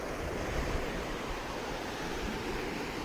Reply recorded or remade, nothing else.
recorded